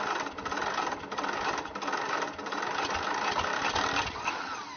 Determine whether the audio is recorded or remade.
recorded